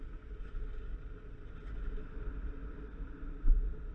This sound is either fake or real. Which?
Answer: real